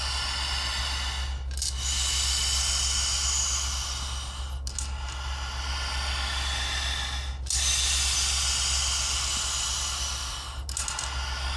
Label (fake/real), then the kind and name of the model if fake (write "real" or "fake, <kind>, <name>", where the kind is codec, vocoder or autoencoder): real